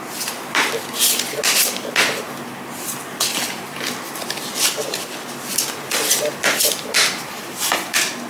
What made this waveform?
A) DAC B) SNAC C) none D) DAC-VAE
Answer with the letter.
C